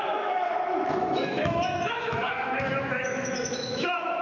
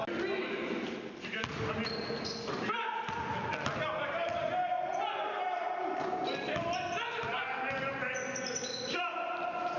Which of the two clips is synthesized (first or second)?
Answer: first